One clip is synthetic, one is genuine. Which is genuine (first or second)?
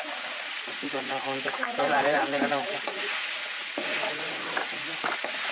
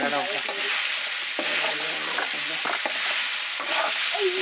second